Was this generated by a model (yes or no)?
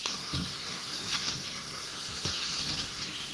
yes